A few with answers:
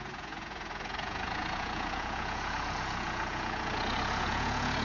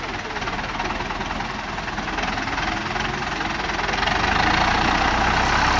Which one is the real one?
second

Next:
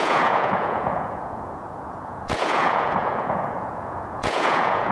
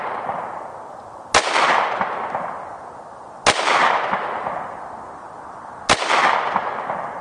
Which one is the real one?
second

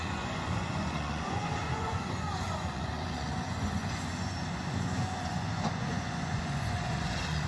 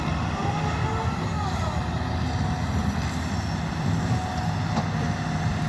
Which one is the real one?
second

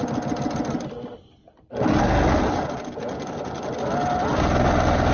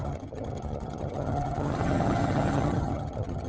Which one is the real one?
first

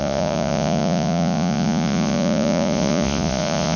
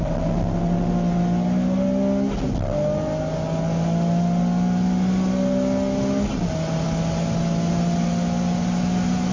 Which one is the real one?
second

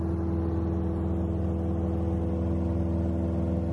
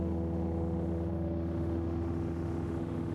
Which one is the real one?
first